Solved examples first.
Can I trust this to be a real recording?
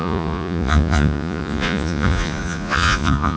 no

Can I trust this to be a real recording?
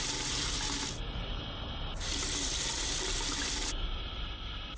yes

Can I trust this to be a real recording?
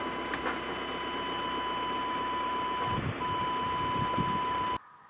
yes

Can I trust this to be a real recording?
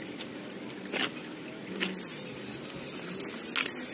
yes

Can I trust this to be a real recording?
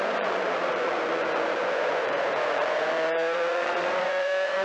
no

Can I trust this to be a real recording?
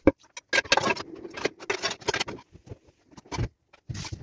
yes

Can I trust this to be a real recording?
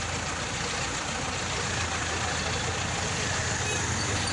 yes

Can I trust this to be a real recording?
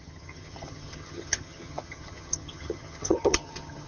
no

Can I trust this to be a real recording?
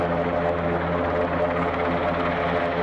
yes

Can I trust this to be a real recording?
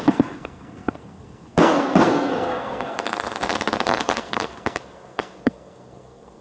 no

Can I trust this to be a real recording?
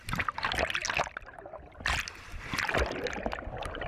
yes